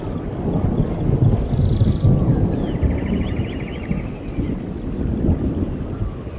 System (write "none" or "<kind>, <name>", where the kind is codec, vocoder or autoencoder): none